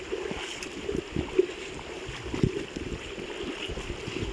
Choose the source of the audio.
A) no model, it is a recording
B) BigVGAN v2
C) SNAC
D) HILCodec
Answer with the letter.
A